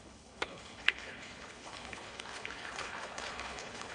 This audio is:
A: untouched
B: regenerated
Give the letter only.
B